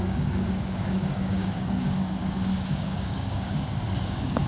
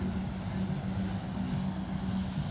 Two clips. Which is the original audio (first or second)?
second